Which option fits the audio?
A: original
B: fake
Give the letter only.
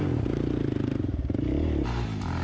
B